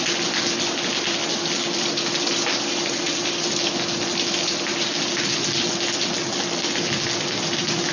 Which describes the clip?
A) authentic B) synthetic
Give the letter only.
A